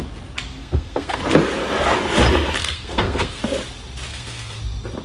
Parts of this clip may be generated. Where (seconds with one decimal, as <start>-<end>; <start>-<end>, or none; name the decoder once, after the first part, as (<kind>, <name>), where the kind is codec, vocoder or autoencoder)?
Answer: 0.6-1.2 (codec, SNAC); 2.6-3.4; 4.1-4.6